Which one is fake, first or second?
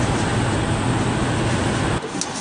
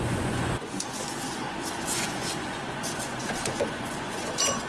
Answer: second